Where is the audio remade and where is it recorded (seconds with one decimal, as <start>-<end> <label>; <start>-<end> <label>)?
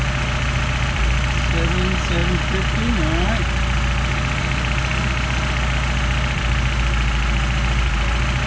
0.0-8.5 recorded